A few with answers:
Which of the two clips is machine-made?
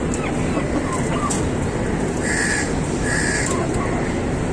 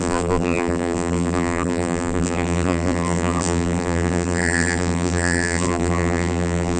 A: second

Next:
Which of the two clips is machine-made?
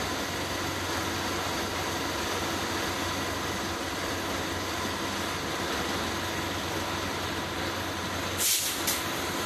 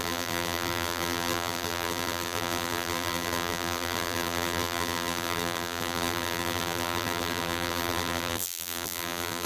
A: second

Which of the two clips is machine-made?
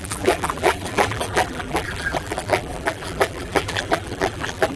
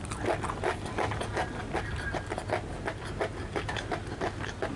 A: first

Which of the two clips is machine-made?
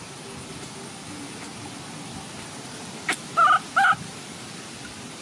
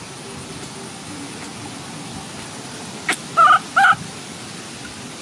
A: first